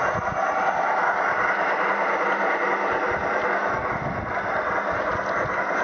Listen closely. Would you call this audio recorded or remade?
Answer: recorded